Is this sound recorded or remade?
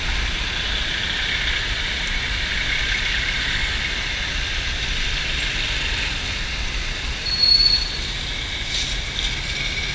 recorded